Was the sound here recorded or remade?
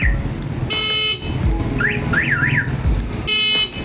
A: recorded